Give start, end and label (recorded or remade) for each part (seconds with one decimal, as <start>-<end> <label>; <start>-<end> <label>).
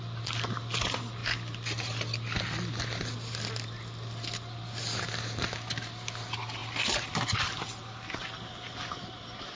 0.0-9.5 recorded